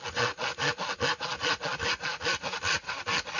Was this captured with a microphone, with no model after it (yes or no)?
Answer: yes